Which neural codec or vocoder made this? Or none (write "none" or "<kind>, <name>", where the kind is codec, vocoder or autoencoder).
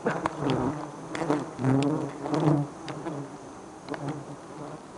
none